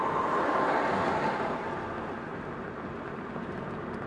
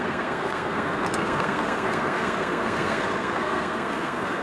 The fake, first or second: second